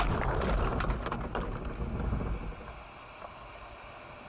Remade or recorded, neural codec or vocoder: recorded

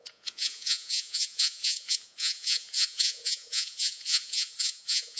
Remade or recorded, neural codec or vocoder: remade, vocoder, Vocos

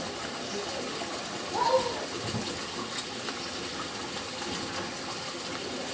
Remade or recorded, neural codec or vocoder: recorded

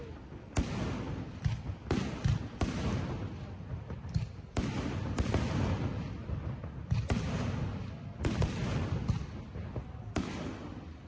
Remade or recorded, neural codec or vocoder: recorded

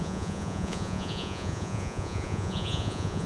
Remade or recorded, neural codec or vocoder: remade, vocoder, Vocos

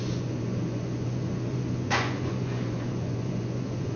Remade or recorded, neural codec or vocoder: remade, vocoder, Vocos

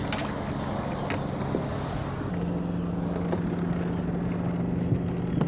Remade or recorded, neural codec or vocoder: recorded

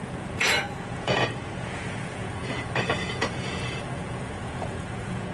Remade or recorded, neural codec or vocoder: remade, vocoder, Vocos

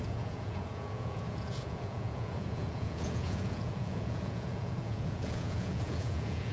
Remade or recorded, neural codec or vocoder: remade, vocoder, Vocos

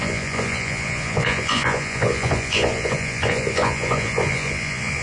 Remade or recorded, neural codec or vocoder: remade, vocoder, Vocos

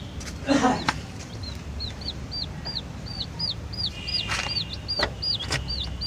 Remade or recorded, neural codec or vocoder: recorded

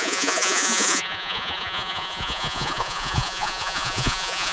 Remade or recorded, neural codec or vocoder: remade, vocoder, Vocos